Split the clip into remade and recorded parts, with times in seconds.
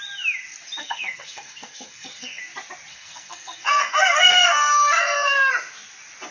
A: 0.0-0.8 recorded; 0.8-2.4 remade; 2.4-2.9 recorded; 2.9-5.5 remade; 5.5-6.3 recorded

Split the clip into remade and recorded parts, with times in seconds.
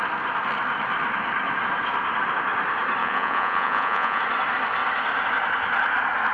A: 0.0-3.0 recorded; 3.0-4.2 remade; 4.2-6.3 recorded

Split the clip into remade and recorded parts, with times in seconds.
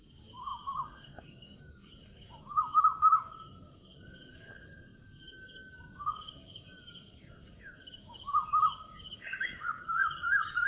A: 0.0-10.7 remade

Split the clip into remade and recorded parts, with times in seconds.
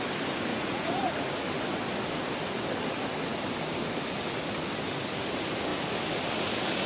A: 0.0-0.5 recorded; 0.5-1.3 remade; 1.3-6.9 recorded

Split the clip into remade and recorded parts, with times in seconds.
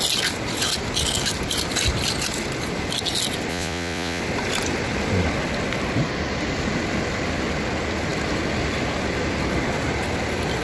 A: 0.0-3.5 recorded; 3.5-4.2 remade; 4.2-10.6 recorded